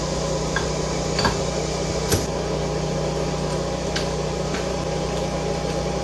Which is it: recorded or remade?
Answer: recorded